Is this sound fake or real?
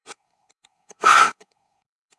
fake